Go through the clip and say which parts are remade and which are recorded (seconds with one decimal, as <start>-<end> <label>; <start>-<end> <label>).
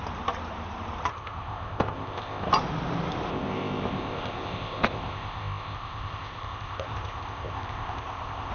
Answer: 0.0-1.1 recorded; 1.1-2.5 remade; 2.5-3.3 recorded; 3.3-8.5 remade